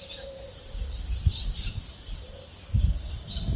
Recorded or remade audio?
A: remade